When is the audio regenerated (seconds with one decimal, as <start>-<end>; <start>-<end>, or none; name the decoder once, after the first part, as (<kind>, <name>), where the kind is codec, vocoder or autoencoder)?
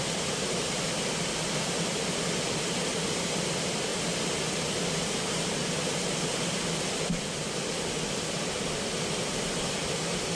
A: 0.0-3.9 (vocoder, BigVGAN v2); 6.5-10.3